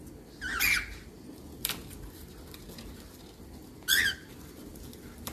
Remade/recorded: recorded